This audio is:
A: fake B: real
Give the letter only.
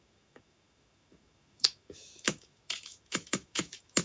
A